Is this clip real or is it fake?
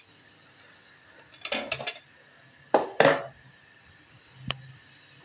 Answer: real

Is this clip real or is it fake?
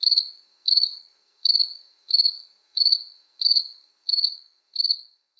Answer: fake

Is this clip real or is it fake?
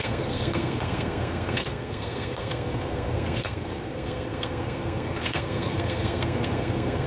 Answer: fake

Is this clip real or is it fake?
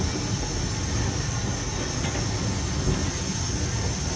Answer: real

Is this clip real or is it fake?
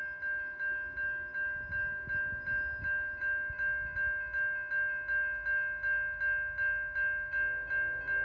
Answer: real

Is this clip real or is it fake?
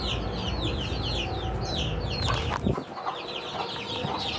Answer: real